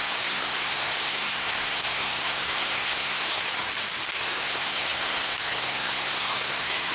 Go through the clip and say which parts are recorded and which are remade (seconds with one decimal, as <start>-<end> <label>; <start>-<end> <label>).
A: 0.0-3.5 remade; 3.5-4.1 recorded; 4.1-6.9 remade

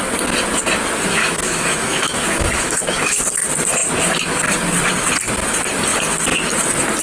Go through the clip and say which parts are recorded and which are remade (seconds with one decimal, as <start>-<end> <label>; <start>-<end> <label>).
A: 0.0-1.2 recorded; 1.2-3.2 remade; 3.2-7.0 recorded